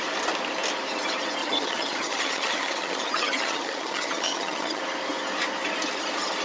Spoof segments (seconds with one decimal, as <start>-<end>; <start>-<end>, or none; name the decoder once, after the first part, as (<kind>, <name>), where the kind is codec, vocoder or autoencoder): 1.4-4.8 (vocoder, HiFi-GAN)